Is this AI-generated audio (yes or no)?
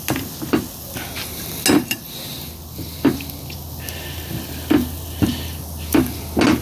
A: no